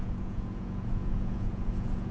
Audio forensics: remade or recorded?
remade